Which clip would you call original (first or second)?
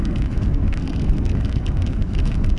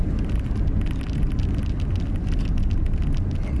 second